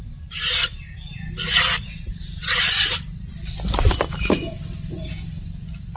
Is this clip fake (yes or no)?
no